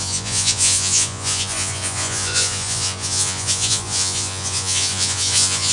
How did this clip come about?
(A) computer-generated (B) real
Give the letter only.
A